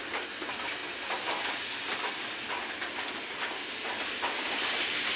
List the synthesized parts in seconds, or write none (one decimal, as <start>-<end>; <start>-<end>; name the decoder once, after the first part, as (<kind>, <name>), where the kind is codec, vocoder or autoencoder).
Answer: none